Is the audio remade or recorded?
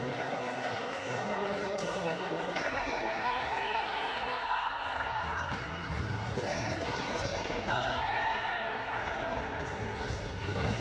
remade